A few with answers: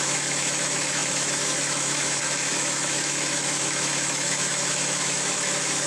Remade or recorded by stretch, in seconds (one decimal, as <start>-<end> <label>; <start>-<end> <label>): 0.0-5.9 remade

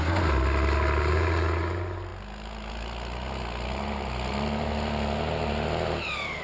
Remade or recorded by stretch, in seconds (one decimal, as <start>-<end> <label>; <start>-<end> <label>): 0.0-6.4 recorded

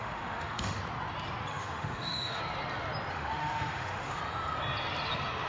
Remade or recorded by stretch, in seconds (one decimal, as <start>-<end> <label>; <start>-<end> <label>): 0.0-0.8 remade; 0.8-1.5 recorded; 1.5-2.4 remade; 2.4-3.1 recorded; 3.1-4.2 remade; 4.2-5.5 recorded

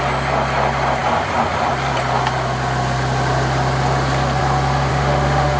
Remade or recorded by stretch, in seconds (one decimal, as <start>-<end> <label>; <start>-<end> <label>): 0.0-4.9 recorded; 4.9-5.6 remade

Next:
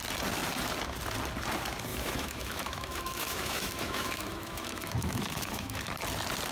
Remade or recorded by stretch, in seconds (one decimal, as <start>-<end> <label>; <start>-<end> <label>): 0.0-1.9 recorded; 1.9-5.8 remade; 5.8-6.5 recorded